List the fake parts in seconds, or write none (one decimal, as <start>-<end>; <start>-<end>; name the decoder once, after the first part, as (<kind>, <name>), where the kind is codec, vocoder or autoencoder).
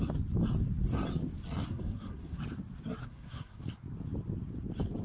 1.7-2.4 (codec, SNAC); 3.0-3.6